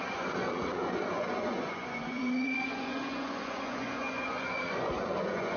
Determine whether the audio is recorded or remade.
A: remade